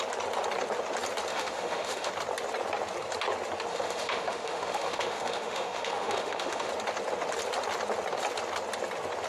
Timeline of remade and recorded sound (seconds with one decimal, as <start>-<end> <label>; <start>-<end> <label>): 0.0-1.3 recorded; 1.3-2.1 remade; 2.1-3.7 recorded; 3.7-6.7 remade; 6.7-9.3 recorded